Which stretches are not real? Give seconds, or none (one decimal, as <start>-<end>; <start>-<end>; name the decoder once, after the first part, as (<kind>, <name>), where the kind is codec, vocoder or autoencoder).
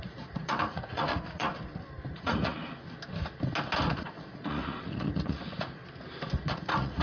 0.0-1.5 (vocoder, Vocos); 2.1-2.6; 3.9-5.8; 6.4-7.0